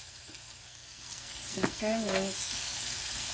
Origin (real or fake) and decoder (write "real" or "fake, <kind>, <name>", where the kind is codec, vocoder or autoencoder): fake, codec, SNAC